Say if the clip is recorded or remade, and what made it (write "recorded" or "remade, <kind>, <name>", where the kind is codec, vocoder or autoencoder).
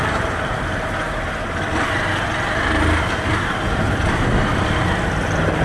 recorded